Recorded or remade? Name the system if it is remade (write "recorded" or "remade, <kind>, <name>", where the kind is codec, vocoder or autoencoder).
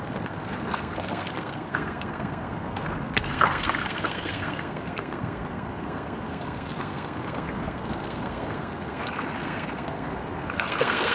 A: remade, codec, SNAC